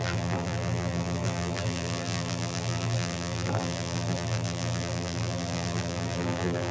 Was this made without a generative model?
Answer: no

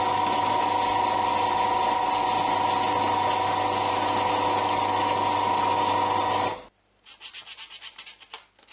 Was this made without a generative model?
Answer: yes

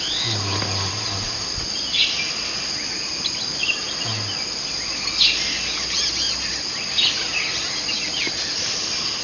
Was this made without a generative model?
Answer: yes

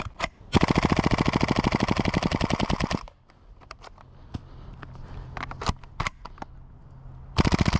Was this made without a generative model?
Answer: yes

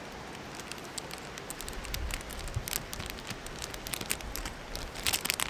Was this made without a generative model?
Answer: yes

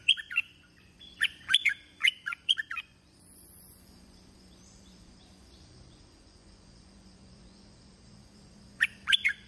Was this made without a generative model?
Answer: no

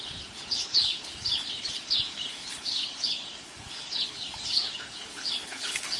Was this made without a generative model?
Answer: no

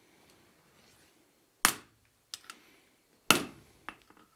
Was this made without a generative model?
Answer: yes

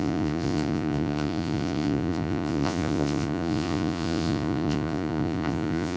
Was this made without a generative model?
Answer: no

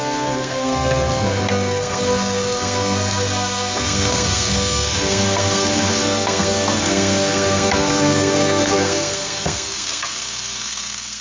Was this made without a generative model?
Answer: no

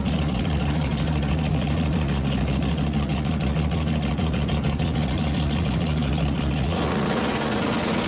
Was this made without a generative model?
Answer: no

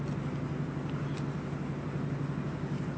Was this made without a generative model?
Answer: yes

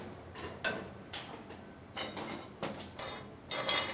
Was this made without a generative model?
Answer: yes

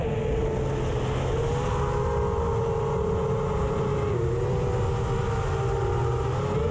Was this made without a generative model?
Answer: yes